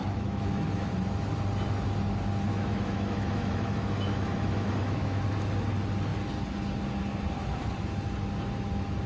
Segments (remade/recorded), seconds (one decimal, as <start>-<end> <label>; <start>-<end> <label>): 0.0-0.9 remade; 0.9-2.5 recorded; 2.5-5.2 remade; 5.2-9.1 recorded